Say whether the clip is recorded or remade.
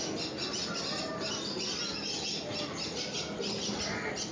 recorded